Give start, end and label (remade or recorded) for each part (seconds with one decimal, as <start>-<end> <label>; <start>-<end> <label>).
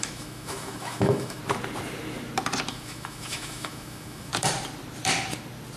0.0-1.4 remade; 1.4-2.7 recorded; 2.7-4.3 remade; 4.3-5.8 recorded